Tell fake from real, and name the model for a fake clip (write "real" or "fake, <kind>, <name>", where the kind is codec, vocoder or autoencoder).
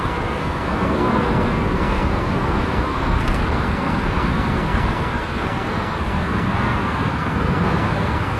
fake, codec, SNAC